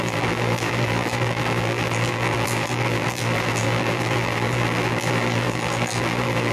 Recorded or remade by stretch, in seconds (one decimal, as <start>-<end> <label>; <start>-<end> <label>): 0.0-6.5 remade